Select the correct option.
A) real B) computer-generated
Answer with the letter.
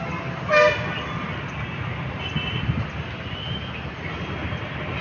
A